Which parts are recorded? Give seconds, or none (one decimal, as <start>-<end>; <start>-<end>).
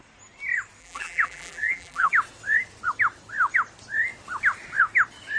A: 0.0-0.8; 2.1-5.4